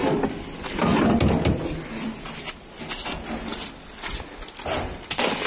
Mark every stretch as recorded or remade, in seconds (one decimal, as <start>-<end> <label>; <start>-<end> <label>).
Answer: 0.0-5.5 recorded